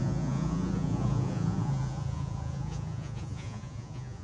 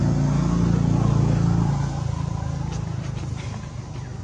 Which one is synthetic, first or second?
first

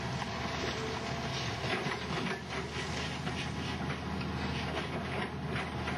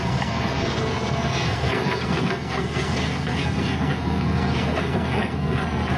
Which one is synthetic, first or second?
second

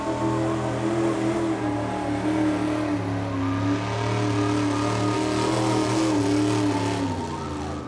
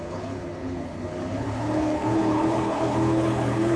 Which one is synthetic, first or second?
second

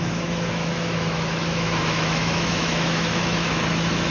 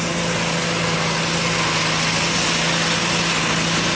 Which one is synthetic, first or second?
first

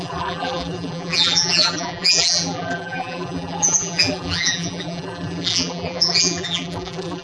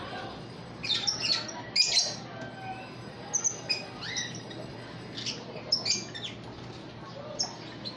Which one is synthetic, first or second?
first